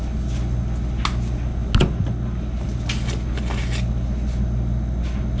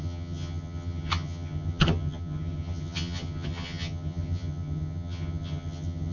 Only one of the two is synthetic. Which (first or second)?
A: second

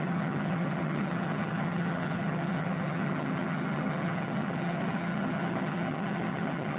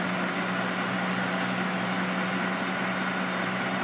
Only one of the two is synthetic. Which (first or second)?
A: first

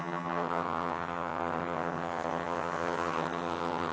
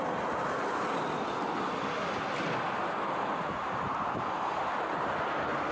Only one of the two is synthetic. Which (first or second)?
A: first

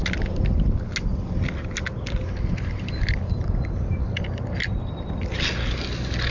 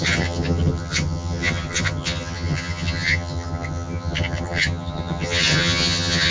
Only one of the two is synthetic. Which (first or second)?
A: second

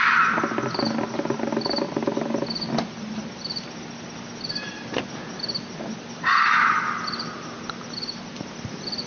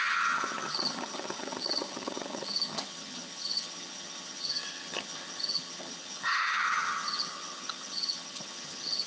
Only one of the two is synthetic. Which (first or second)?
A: second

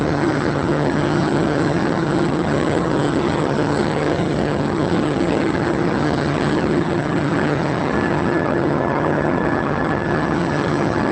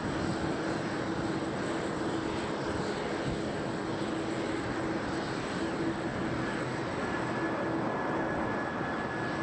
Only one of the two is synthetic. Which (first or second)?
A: first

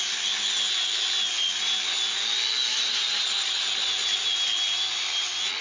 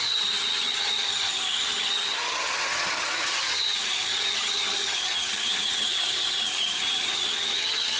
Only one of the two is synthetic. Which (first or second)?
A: second